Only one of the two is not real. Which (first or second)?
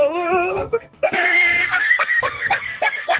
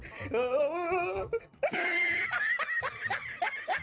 first